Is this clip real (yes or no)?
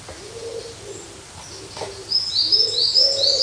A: yes